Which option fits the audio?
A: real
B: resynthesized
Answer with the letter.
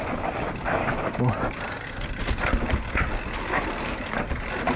A